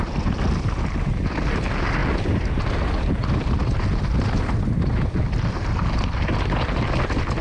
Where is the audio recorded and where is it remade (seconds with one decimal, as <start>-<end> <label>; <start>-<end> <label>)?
0.0-7.4 recorded